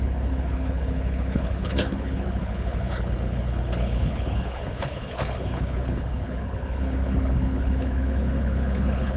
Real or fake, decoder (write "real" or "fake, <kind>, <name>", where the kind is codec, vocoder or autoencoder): fake, codec, HILCodec